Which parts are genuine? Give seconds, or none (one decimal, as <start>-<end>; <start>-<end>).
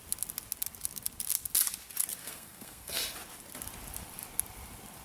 0.0-2.2; 3.0-5.0